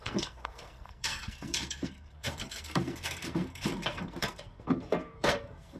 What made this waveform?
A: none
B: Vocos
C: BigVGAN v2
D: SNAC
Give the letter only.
D